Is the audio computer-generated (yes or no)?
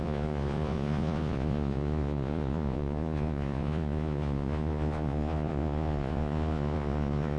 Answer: yes